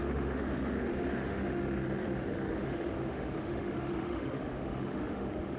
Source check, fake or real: fake